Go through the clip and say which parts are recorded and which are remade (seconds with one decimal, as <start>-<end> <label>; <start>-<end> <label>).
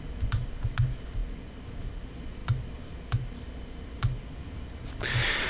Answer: 0.0-5.5 recorded